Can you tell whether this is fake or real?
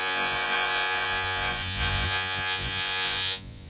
fake